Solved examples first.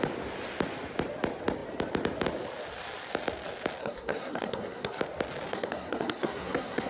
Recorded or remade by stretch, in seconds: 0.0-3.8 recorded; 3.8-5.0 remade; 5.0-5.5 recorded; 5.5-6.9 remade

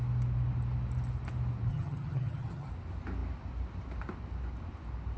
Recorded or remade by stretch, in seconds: 0.0-1.7 recorded; 1.7-2.7 remade; 2.7-5.2 recorded

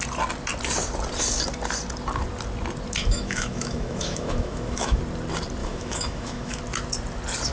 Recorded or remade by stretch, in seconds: 0.0-3.0 recorded; 3.0-5.0 remade; 5.0-5.6 recorded; 5.6-6.6 remade; 6.6-7.5 recorded